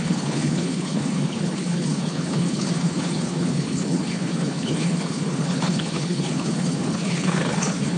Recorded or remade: remade